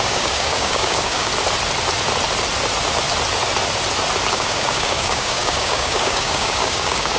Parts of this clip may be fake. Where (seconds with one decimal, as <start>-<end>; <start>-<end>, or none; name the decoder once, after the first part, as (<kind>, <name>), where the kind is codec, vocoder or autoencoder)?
0.0-1.3 (codec, DAC); 4.3-7.2